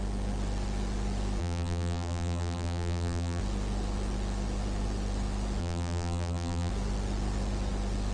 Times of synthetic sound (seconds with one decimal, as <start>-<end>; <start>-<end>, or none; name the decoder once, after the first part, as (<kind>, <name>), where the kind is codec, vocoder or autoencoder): 1.4-3.4 (vocoder, BigVGAN v2); 5.6-6.7